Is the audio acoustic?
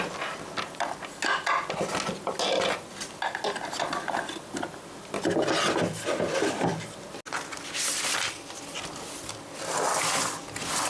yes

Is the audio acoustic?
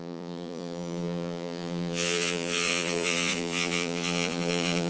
no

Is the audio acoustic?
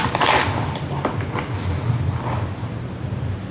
yes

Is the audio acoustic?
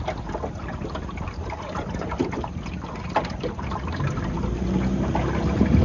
yes